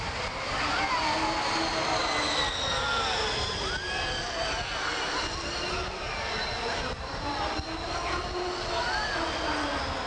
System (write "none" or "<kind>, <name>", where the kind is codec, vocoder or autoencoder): none